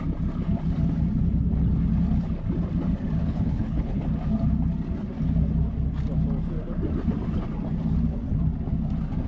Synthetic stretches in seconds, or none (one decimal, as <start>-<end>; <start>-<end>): 3.2-4.0